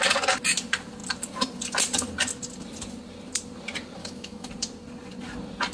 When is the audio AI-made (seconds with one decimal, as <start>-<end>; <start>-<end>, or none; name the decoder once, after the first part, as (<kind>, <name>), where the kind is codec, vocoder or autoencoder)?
4.0-4.5 (autoencoder, DAC-VAE)